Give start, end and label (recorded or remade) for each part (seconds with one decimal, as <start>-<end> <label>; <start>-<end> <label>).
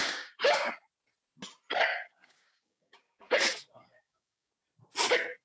0.0-0.7 remade; 0.7-1.9 recorded; 1.9-4.5 remade; 4.5-5.4 recorded